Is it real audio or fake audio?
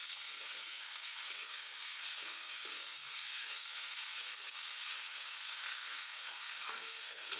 fake